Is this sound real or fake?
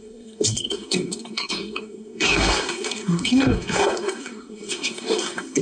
fake